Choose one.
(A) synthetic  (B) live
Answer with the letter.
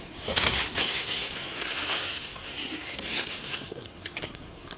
A